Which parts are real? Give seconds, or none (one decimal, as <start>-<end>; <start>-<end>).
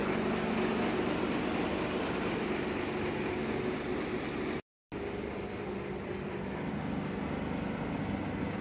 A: 0.0-8.6